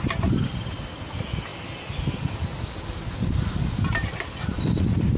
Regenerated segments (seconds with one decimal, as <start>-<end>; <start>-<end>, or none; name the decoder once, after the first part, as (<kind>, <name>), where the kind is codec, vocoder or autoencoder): none